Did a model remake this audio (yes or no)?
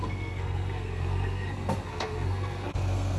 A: yes